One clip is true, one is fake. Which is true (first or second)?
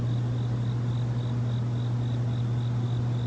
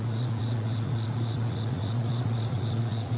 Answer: first